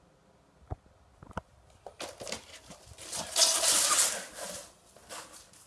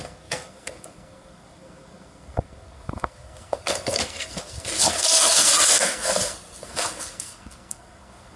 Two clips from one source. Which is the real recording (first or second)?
first